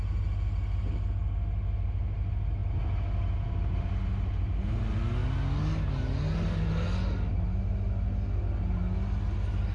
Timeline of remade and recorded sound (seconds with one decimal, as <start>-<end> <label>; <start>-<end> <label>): 0.0-9.7 recorded